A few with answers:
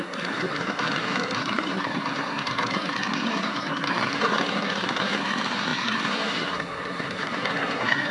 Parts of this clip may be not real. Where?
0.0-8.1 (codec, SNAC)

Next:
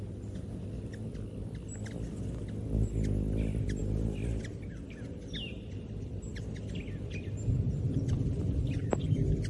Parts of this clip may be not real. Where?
none

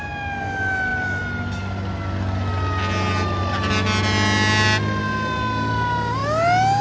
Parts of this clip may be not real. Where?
none